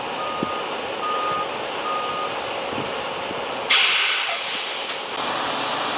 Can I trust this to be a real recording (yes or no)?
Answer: yes